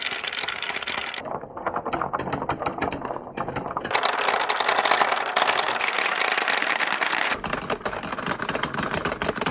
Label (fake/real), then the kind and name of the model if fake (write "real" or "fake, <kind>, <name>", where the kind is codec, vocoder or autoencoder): real